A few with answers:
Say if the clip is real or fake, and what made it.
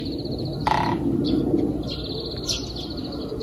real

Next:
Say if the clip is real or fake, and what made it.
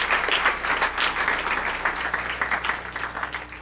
real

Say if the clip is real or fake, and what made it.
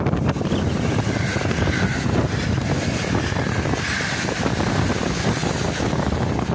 real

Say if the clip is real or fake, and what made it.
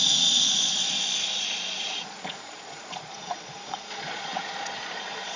fake, vocoder, Vocos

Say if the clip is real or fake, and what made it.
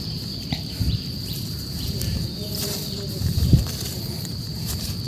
fake, vocoder, BigVGAN v2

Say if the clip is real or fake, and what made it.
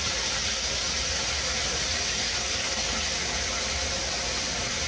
real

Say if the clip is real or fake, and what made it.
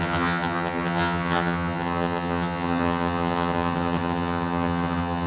fake, vocoder, HiFi-GAN